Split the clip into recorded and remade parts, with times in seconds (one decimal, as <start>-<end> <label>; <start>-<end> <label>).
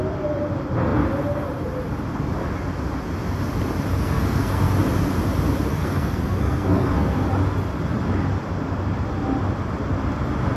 0.0-3.9 recorded; 3.9-4.7 remade; 4.7-5.7 recorded; 5.7-7.3 remade; 7.3-10.6 recorded